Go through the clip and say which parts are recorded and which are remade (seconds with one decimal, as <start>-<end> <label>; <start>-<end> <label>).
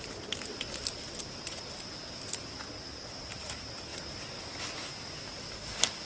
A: 0.0-6.0 recorded